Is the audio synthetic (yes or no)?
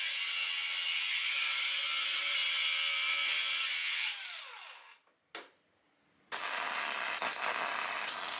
no